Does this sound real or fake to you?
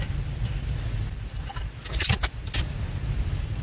real